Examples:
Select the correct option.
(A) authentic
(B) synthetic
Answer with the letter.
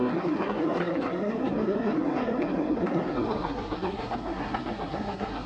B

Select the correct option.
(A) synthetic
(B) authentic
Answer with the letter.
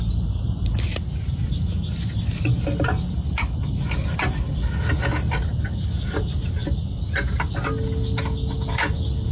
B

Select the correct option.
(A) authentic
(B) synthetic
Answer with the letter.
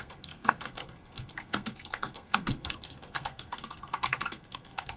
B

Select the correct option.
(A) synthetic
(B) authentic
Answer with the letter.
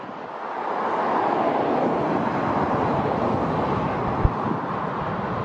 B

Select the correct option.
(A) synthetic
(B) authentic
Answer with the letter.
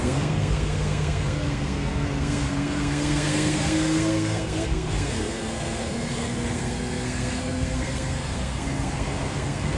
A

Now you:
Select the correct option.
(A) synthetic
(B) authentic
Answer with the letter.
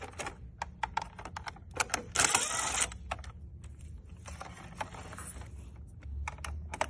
B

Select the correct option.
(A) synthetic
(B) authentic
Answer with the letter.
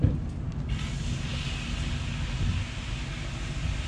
B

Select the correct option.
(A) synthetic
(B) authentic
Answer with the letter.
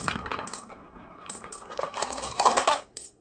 A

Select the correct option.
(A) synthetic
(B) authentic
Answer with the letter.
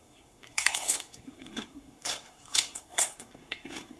A